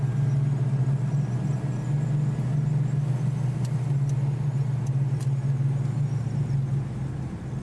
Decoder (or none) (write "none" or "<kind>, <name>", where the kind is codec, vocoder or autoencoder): none